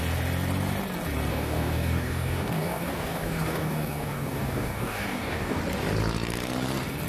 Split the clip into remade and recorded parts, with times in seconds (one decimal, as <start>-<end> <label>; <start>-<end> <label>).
0.0-1.3 recorded; 1.3-5.6 remade; 5.6-7.1 recorded